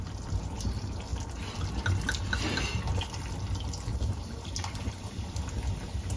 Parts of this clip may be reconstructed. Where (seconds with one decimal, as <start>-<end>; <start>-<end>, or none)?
3.9-4.9